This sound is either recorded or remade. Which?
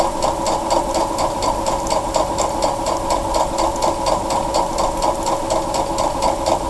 recorded